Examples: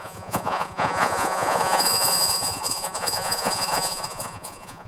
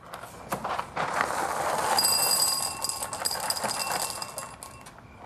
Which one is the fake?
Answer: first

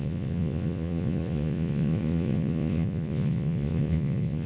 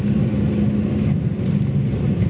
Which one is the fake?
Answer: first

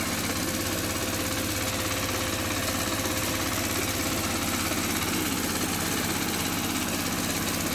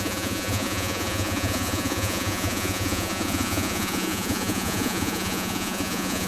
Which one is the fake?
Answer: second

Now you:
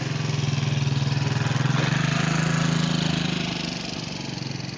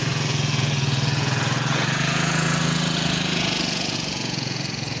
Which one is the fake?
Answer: second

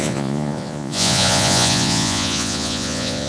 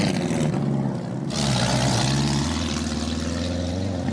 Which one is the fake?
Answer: first